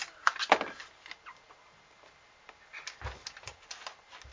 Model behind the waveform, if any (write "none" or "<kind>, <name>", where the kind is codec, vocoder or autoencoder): none